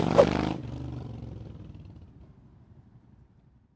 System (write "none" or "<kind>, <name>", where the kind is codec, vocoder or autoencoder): none